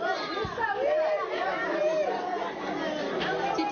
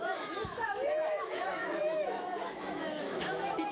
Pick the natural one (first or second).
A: first